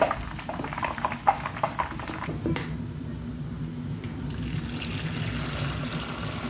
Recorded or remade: recorded